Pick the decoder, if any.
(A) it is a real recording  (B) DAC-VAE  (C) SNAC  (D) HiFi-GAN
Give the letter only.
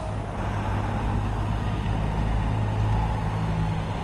A